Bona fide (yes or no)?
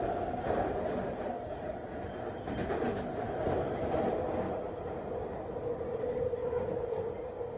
yes